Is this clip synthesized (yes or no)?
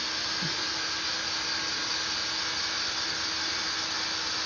no